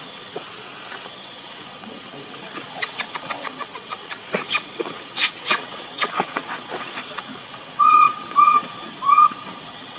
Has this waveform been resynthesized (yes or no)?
yes